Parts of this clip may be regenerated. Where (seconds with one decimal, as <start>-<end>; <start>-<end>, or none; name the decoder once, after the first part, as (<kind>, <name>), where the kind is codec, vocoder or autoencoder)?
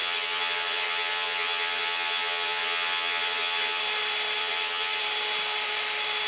0.0-3.8 (vocoder, HiFi-GAN); 4.4-5.0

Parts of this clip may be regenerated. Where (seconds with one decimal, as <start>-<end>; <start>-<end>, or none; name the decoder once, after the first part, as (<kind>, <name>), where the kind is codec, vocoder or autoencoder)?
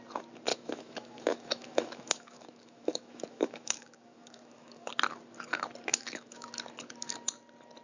0.5-4.9 (autoencoder, DAC-VAE); 5.9-6.5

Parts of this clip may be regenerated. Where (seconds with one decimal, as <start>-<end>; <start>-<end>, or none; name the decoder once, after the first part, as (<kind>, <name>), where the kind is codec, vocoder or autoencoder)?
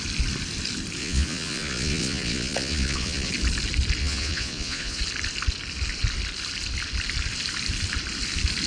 1.0-3.3 (vocoder, Vocos); 4.0-5.0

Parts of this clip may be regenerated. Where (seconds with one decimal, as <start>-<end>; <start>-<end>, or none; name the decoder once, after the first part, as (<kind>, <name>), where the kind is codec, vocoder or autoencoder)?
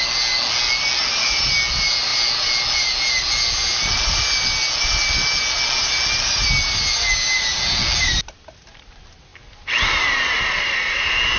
none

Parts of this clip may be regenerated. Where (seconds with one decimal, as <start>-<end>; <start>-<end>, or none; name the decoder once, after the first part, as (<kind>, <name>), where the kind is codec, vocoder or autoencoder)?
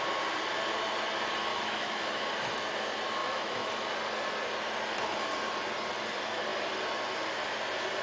1.5-2.2 (autoencoder, DAC-VAE); 3.2-3.7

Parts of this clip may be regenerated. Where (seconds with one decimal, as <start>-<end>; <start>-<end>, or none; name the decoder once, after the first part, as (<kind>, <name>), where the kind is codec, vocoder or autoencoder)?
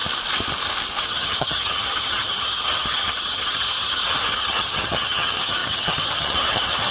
1.0-6.9 (vocoder, HiFi-GAN)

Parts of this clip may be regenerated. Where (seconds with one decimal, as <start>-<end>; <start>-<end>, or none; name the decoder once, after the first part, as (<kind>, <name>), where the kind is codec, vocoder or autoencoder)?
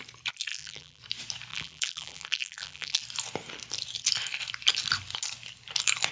0.5-1.0 (vocoder, BigVGAN v2); 1.5-3.0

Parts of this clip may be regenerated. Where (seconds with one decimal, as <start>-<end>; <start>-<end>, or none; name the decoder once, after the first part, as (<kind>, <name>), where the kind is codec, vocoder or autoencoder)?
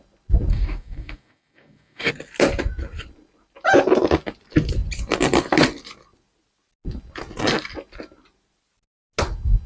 0.5-2.1 (codec, DAC)